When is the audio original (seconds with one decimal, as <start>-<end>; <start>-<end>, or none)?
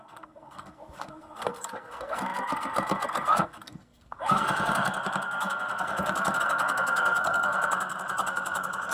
none